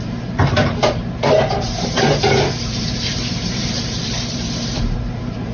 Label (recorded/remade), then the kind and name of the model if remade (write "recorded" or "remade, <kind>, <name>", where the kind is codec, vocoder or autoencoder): remade, vocoder, BigVGAN v2